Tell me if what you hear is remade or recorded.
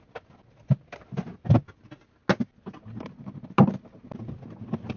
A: recorded